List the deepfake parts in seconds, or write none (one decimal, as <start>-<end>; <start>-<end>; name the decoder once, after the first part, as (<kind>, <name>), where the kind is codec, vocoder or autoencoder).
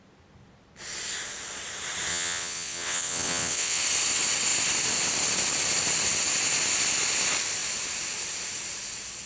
2.1-3.8 (vocoder, WaveNeXt)